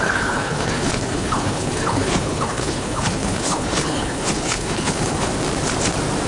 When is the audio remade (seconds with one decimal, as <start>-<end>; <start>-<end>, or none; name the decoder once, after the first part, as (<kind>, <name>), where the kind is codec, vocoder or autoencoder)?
0.0-5.3 (codec, HILCodec)